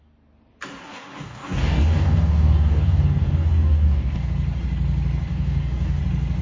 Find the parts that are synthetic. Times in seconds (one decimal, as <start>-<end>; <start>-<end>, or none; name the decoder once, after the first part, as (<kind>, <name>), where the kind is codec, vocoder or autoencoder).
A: 0.8-4.3 (codec, DAC); 5.3-6.0